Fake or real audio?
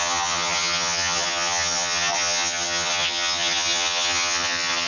fake